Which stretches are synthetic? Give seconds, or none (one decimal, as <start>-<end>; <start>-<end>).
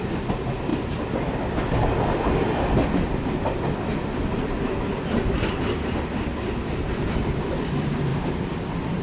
none